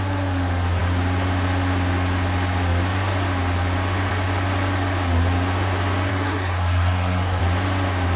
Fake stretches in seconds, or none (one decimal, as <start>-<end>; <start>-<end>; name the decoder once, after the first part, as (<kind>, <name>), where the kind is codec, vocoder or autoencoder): 6.1-7.4 (codec, SNAC)